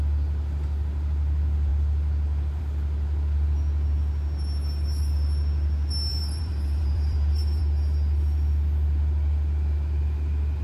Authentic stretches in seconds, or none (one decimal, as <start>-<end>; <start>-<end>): 0.0-6.1; 7.6-10.6